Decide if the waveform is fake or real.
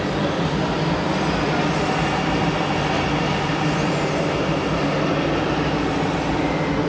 real